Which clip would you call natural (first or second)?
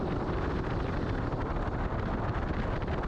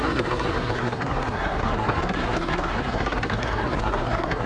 first